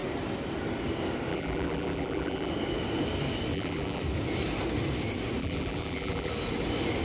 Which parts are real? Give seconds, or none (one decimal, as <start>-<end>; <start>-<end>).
0.0-1.3; 2.5-3.5; 4.0-5.4; 6.3-7.0